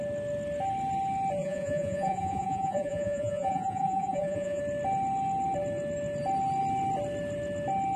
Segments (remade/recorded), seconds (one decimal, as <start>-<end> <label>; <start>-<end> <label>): 0.0-1.4 recorded; 1.4-4.6 remade; 4.6-8.0 recorded